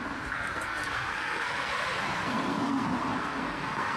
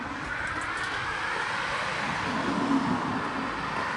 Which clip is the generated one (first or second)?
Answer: first